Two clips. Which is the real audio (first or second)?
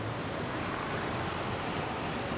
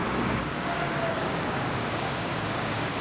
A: first